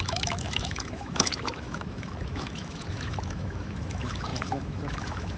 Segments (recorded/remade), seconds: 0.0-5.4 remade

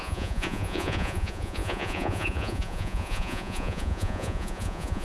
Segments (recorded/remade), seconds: 0.0-5.0 remade

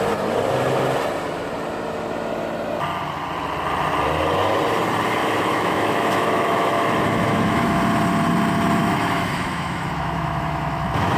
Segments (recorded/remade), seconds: 0.0-5.2 recorded; 5.2-7.8 remade; 7.8-8.8 recorded; 8.8-11.2 remade